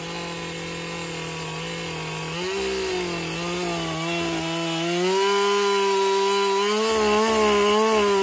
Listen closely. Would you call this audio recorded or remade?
recorded